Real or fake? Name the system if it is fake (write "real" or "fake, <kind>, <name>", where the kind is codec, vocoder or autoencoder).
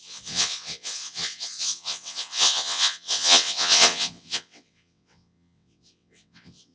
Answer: fake, vocoder, WaveNeXt